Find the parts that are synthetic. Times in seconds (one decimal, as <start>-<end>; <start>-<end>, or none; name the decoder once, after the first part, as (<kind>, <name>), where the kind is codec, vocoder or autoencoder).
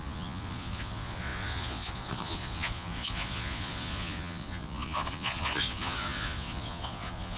0.0-7.4 (vocoder, Vocos)